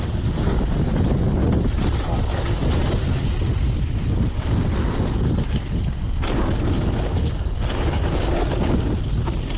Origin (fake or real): real